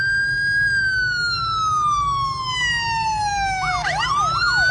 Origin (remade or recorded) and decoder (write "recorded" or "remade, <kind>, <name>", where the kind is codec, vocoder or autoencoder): recorded